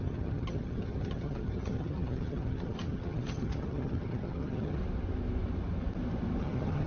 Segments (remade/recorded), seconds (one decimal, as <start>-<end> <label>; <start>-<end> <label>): 0.0-4.8 remade; 4.8-6.4 recorded; 6.4-6.9 remade